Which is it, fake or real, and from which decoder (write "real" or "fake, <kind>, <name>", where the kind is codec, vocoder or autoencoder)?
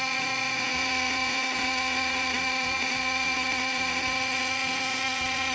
fake, vocoder, Vocos